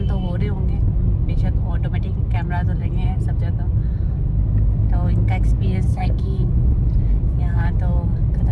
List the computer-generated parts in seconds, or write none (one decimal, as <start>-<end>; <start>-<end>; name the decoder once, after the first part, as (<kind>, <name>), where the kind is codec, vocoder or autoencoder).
5.9-6.5 (codec, SNAC)